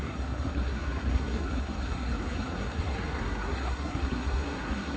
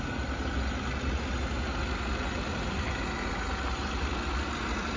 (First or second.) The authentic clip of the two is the second